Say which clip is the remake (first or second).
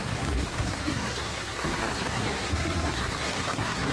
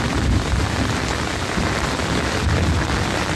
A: first